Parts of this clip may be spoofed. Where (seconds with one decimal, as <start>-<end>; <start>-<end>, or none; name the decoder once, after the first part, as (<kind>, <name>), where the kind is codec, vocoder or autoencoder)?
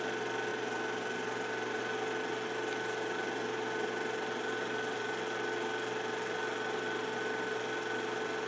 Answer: none